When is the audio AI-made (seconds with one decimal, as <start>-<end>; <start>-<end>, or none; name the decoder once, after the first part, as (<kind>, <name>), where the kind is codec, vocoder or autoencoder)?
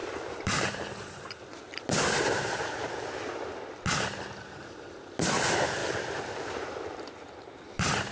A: 0.0-1.4 (vocoder, BigVGAN v2); 5.8-7.5